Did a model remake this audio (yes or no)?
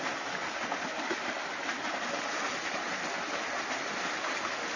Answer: no